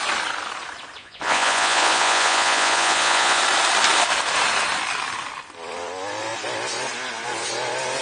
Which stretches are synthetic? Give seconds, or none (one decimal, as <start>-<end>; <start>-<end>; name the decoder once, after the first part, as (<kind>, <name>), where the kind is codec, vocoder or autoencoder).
1.0-3.4 (vocoder, Vocos)